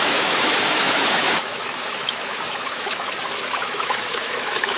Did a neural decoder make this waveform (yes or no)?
yes